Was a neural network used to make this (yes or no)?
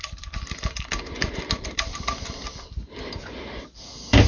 yes